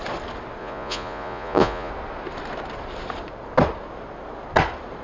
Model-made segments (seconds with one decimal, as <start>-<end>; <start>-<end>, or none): 0.6-1.9